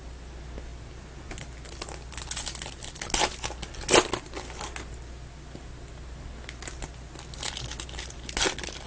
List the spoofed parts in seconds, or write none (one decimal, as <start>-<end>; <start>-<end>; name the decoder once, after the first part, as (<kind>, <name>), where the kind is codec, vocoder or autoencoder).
none